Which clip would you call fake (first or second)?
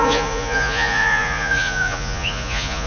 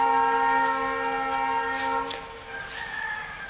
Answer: first